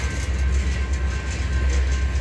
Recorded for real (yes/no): yes